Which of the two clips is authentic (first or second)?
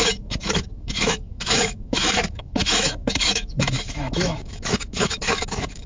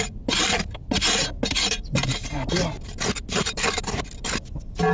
second